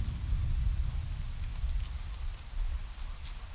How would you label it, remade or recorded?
recorded